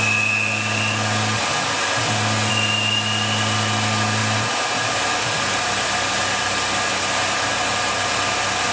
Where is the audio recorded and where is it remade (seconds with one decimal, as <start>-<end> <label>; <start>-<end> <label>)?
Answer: 0.0-8.7 recorded

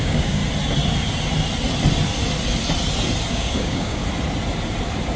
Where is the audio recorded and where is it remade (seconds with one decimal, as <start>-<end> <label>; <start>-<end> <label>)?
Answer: 0.0-0.4 remade; 0.4-3.3 recorded; 3.3-4.0 remade; 4.0-5.2 recorded

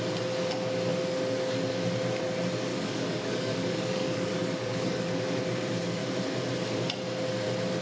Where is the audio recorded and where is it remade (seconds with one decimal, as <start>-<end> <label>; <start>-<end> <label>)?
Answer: 0.0-2.7 recorded; 2.7-5.4 remade; 5.4-7.8 recorded

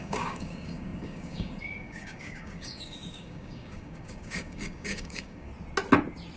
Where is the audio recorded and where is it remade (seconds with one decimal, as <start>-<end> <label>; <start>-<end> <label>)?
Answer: 0.0-5.5 remade; 5.5-6.4 recorded

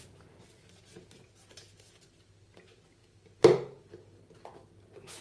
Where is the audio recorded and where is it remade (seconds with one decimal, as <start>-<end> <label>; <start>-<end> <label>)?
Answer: 0.0-5.2 recorded

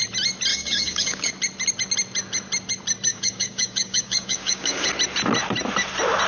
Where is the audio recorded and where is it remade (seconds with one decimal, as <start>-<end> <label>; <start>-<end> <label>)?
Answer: 0.0-0.5 recorded; 0.5-1.3 remade; 1.3-3.1 recorded; 3.1-4.9 remade; 4.9-6.3 recorded

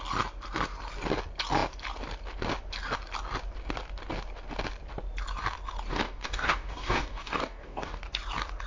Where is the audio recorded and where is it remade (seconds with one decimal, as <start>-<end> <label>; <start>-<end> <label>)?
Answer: 0.0-5.9 recorded; 5.9-8.0 remade; 8.0-8.7 recorded

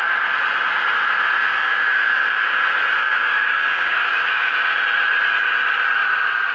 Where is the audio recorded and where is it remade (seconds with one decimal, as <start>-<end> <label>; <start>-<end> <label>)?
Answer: 0.0-1.4 recorded; 1.4-2.6 remade; 2.6-3.0 recorded; 3.0-4.5 remade; 4.5-6.5 recorded